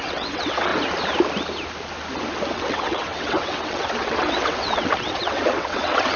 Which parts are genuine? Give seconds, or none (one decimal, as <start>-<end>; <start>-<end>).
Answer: 0.7-2.5